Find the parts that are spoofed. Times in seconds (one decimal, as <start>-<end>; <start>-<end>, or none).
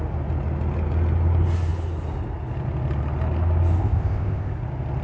3.8-4.5